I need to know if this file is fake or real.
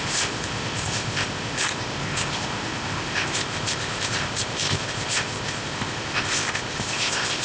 fake